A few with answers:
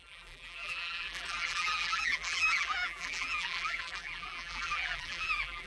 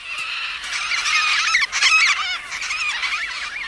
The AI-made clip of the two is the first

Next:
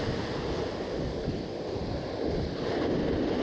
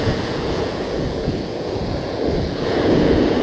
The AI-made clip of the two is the second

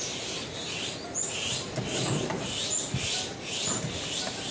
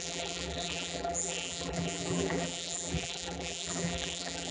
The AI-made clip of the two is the second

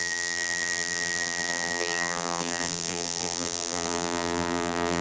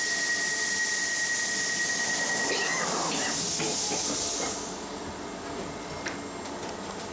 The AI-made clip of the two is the first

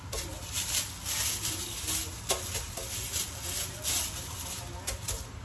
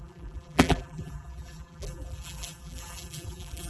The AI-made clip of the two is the second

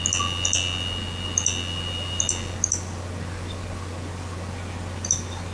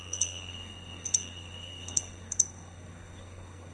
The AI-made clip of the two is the second